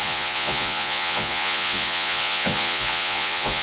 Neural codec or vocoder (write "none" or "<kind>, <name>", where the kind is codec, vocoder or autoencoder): vocoder, Vocos